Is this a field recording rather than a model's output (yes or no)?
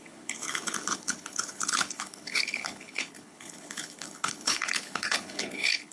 no